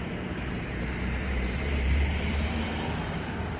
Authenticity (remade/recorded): remade